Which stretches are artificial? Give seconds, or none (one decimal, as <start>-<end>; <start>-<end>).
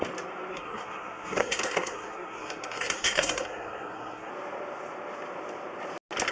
0.5-4.3